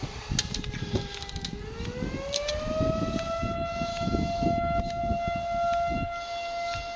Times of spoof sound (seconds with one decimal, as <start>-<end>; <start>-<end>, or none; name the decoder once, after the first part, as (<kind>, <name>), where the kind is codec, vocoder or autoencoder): 3.9-5.0 (autoencoder, DAC-VAE)